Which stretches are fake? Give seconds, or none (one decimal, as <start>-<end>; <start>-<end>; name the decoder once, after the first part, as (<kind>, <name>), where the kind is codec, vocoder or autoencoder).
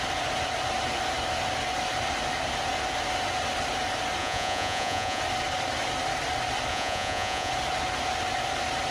4.2-5.2 (vocoder, Vocos); 6.7-7.5